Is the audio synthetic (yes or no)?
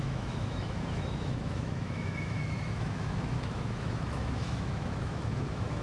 yes